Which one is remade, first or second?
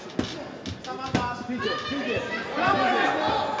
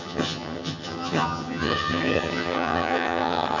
second